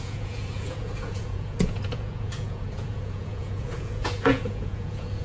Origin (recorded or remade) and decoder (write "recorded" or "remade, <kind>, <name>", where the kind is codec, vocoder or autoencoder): remade, vocoder, Vocos